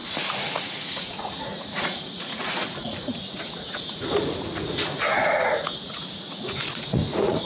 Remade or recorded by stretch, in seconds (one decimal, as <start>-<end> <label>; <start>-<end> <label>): 0.0-0.5 recorded; 0.5-7.5 remade

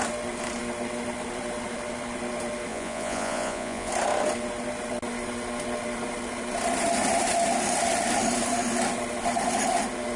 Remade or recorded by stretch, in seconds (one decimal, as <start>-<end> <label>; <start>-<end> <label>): 0.0-2.7 recorded; 2.7-3.9 remade; 3.9-10.2 recorded